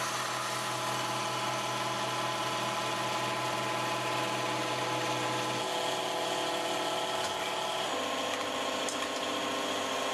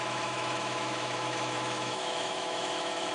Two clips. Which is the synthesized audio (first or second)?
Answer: second